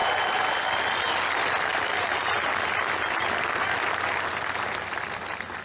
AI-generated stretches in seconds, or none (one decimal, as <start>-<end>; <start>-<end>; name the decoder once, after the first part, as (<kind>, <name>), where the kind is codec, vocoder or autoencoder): none